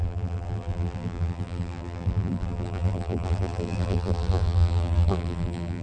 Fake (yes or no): yes